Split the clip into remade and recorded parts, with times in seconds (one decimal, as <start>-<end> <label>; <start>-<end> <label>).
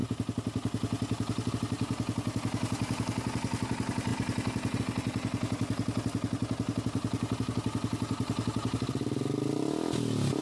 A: 0.0-10.4 recorded